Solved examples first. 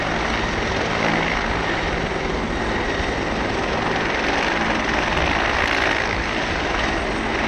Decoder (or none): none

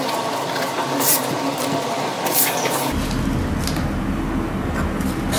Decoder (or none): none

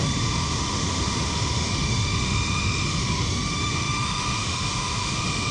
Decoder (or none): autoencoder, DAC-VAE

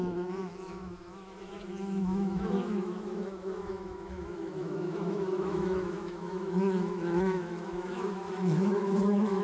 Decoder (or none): autoencoder, DAC-VAE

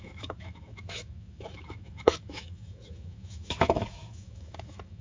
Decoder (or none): autoencoder, DAC-VAE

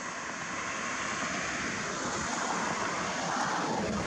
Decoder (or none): none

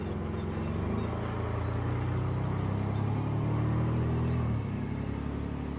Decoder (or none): none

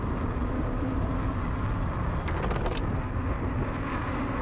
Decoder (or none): none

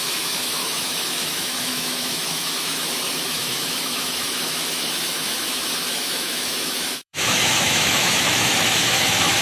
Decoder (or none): autoencoder, DAC-VAE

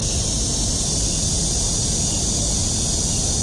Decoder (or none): none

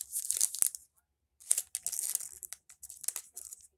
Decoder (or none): none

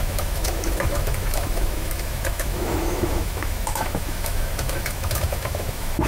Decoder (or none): autoencoder, DAC-VAE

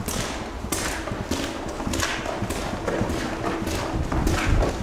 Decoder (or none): none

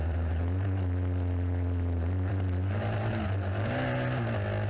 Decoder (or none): none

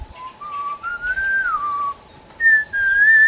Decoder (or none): none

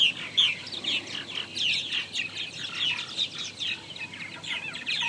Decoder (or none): none